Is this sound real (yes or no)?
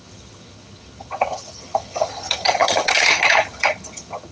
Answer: no